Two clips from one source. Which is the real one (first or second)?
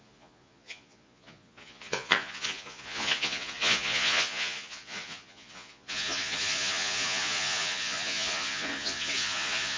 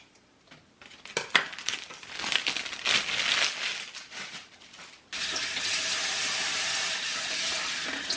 second